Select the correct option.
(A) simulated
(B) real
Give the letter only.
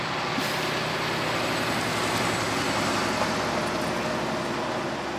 B